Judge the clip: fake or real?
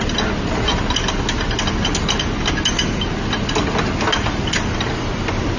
real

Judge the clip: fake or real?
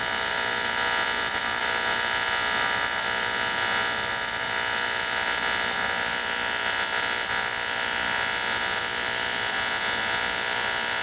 real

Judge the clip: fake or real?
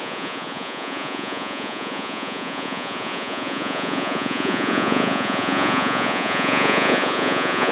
fake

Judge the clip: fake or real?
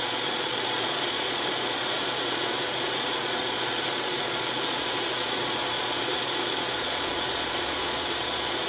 fake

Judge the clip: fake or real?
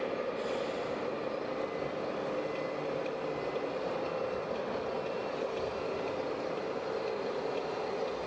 real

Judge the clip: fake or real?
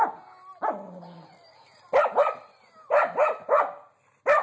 real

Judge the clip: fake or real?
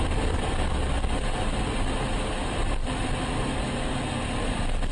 real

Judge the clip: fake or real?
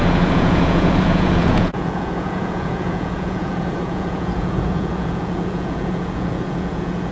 fake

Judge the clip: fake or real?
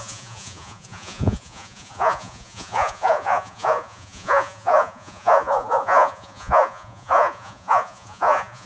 fake